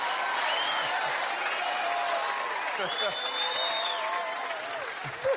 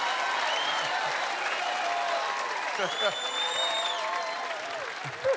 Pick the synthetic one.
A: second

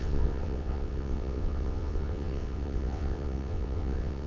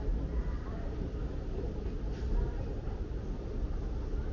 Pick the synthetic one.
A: first